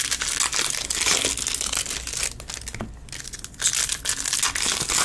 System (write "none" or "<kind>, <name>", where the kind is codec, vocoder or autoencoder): none